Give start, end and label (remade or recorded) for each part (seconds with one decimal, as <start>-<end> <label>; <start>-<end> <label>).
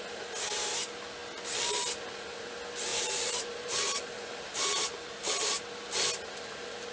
0.0-2.9 recorded; 2.9-5.6 remade; 5.6-6.9 recorded